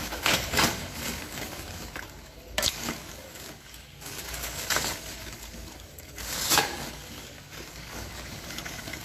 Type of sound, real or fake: fake